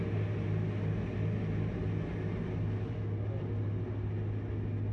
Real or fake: real